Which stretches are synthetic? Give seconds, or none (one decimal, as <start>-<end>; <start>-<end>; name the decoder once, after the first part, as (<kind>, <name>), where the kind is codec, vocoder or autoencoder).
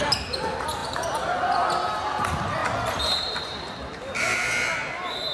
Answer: none